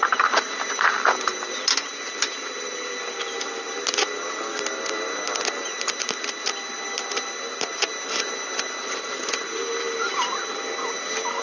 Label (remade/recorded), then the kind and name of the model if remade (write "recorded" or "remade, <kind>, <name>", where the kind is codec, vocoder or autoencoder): recorded